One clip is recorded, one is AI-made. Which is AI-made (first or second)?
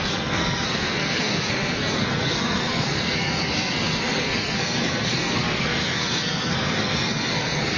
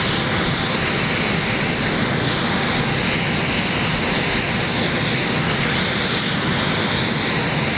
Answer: first